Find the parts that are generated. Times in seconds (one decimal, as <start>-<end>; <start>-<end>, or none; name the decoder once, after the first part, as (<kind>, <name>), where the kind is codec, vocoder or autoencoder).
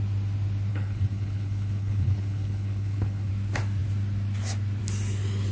0.7-3.3 (codec, HILCodec)